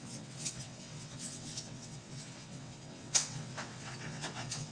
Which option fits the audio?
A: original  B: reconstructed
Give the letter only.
B